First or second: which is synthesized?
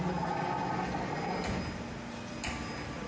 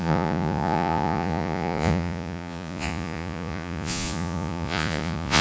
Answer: second